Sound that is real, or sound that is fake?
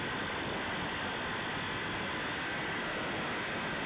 real